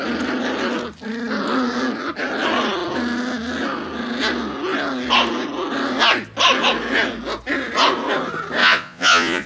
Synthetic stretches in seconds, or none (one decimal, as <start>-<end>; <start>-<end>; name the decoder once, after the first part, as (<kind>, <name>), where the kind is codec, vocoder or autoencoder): 8.6-9.5 (vocoder, Vocos)

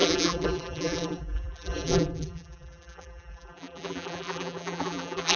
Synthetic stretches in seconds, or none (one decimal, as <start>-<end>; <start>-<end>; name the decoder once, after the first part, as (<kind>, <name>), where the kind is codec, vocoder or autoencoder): 0.0-5.4 (vocoder, BigVGAN v2)

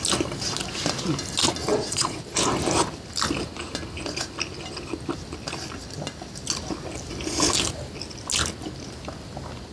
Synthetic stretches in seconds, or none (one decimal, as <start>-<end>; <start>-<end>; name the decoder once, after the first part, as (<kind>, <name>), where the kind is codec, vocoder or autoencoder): 1.7-2.2 (vocoder, Vocos)

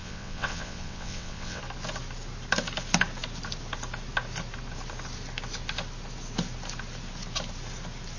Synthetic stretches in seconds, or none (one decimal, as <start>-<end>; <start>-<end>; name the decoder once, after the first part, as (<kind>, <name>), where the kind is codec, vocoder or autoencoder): 0.0-1.6 (vocoder, WaveNeXt)

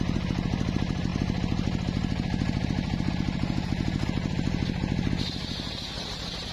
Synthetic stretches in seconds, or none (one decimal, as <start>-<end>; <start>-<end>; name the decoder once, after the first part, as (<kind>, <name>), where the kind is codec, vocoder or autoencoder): none